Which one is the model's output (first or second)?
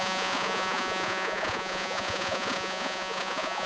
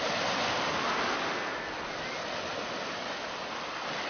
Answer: first